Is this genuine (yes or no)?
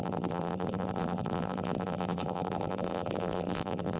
no